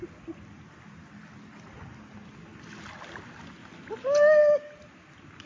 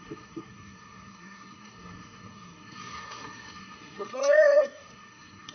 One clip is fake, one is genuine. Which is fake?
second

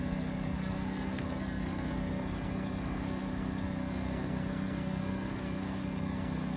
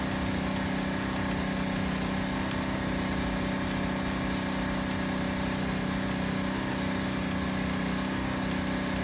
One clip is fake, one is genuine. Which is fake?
first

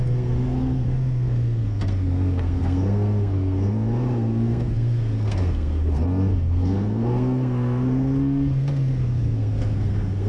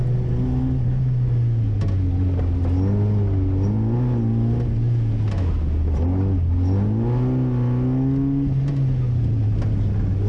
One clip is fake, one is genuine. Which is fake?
first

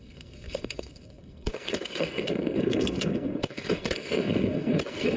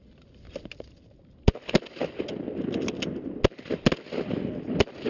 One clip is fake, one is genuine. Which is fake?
first